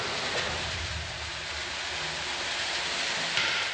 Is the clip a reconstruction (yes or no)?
no